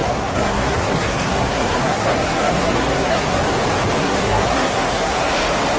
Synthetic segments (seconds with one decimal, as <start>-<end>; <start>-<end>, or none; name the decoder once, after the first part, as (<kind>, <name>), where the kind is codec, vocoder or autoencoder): 0.0-3.4 (codec, SNAC); 4.0-5.3